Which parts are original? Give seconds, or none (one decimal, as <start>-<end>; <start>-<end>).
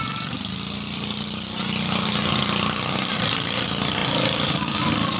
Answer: 0.0-5.2